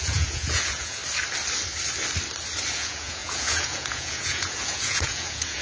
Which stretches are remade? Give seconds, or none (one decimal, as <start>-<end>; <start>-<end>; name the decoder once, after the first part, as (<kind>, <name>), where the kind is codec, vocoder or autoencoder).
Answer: 0.0-1.0 (vocoder, Vocos); 2.7-5.6